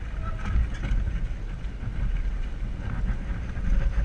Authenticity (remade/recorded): recorded